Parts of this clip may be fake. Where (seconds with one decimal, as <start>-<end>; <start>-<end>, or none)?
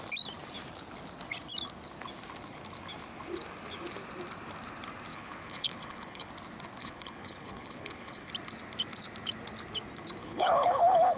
5.1-6.3; 6.8-8.3; 10.2-11.2